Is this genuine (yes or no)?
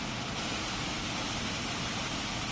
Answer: yes